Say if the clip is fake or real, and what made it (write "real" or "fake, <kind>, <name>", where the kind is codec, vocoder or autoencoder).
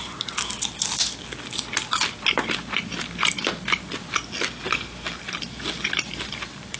real